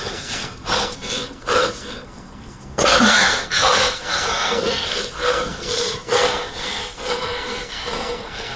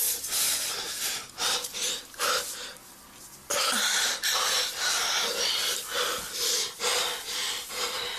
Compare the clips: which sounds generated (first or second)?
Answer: first